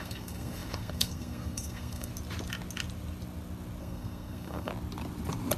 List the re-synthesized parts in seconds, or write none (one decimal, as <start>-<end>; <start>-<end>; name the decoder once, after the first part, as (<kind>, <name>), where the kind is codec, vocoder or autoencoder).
0.0-2.1 (codec, SNAC); 3.8-4.7